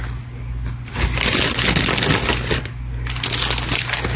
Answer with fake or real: real